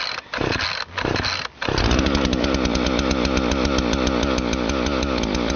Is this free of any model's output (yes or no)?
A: yes